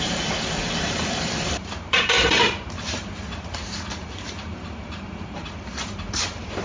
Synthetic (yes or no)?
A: yes